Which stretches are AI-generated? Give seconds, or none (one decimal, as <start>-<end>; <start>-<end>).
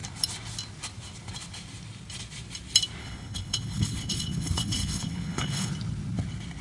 3.0-5.7